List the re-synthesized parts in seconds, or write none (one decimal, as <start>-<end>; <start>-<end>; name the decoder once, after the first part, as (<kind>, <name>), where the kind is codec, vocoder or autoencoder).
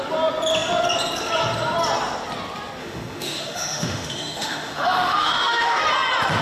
2.8-5.8 (autoencoder, DAC-VAE)